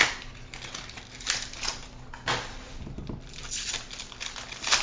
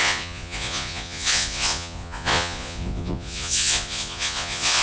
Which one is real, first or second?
first